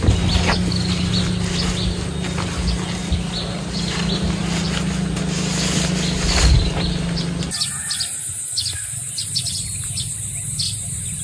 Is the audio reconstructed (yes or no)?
no